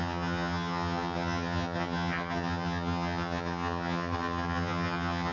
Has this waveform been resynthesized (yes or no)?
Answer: yes